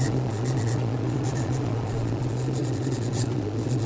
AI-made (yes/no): yes